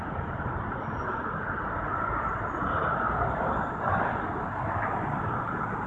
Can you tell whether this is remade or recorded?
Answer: recorded